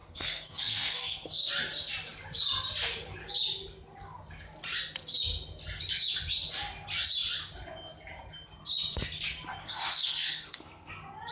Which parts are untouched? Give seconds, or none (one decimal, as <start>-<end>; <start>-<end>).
1.5-9.6; 10.9-11.3